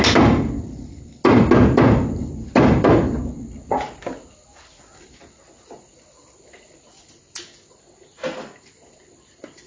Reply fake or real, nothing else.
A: real